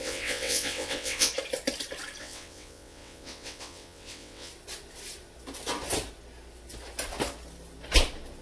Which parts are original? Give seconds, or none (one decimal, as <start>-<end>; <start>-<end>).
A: 1.3-2.2; 4.5-8.4